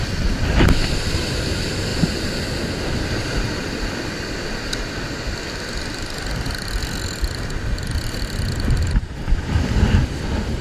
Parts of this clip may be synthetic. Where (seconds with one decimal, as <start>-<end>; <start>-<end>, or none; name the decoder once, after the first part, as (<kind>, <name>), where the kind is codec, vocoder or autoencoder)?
none